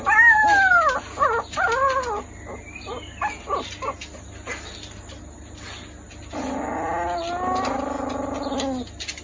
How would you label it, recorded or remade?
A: recorded